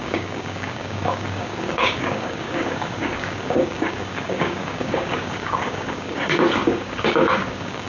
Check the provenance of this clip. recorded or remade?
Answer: remade